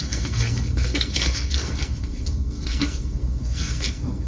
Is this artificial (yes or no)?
yes